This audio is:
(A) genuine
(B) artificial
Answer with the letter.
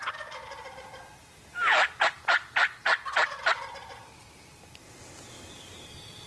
A